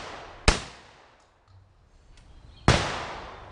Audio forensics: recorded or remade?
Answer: recorded